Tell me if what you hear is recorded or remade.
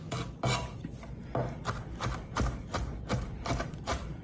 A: recorded